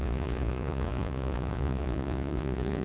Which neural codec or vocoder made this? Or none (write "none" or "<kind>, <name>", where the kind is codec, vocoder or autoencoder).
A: vocoder, Vocos